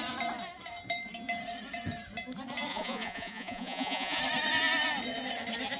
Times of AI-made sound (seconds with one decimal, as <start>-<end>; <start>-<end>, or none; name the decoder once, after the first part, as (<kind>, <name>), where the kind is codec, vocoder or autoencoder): 2.7-4.2 (vocoder, Vocos)